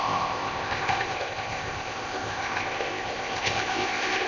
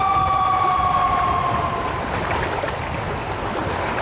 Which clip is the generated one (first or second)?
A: first